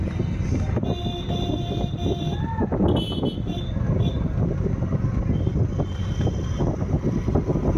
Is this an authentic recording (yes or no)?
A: yes